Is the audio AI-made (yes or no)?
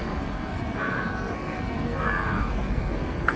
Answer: yes